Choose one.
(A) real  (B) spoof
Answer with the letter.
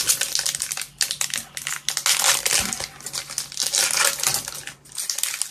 A